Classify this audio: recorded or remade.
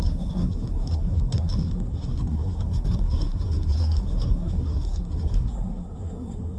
remade